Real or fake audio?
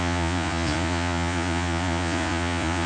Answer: fake